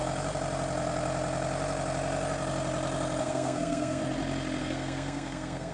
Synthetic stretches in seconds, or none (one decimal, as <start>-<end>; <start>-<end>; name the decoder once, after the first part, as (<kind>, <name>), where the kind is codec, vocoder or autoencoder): 3.2-4.0 (codec, SNAC); 4.6-5.7